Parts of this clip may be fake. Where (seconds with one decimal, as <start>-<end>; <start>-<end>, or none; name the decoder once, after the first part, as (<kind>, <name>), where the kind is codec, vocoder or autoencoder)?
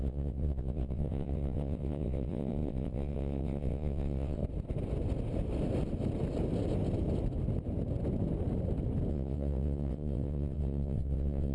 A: 0.0-4.4 (vocoder, WaveNeXt); 9.1-11.5